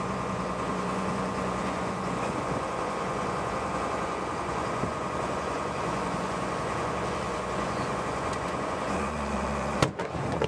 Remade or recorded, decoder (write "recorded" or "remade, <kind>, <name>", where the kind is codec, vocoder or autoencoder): remade, vocoder, Vocos